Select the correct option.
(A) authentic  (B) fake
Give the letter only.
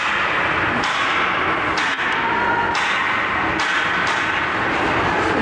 A